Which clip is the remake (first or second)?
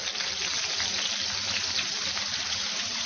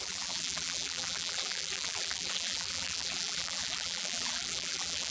second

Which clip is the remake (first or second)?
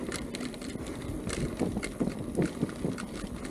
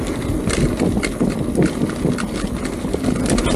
first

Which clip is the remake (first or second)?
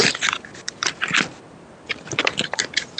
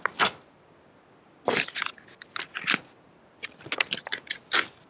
first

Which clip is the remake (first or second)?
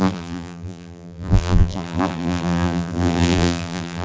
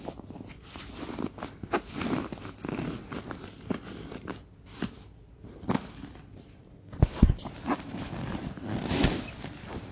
first